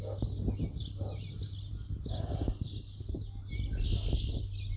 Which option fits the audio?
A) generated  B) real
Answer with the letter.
B